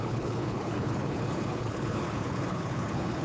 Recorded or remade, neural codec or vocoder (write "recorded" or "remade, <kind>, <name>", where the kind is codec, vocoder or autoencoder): remade, codec, HILCodec